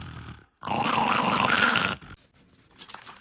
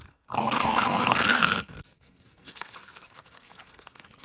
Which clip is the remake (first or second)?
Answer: second